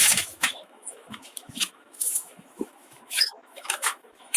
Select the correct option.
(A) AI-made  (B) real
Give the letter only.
A